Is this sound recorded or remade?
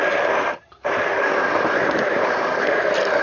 remade